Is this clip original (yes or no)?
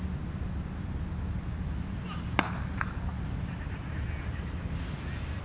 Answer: yes